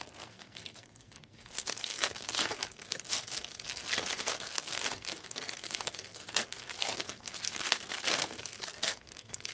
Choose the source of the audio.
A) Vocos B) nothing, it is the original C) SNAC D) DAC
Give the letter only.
C